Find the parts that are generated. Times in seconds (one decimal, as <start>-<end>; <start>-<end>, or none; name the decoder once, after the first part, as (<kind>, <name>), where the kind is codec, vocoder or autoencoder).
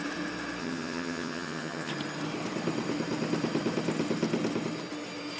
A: 0.6-1.9 (vocoder, HiFi-GAN)